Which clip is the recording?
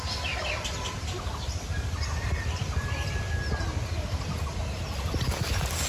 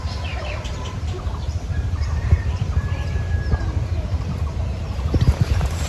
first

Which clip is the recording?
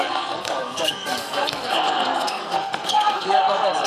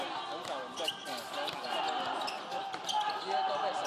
second